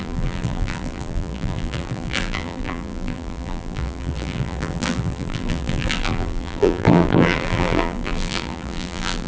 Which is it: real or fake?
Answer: fake